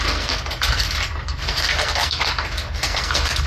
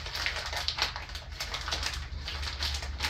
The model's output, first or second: first